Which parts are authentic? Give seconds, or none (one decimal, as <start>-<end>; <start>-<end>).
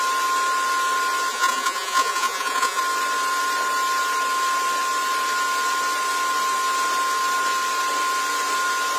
0.0-1.3; 2.8-9.0